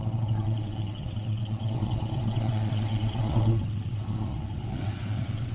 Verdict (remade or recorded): remade